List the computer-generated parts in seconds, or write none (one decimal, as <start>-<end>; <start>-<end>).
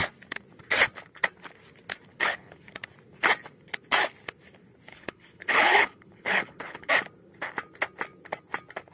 2.1-2.7; 4.9-6.9